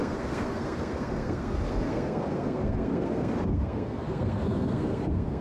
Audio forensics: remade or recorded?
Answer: remade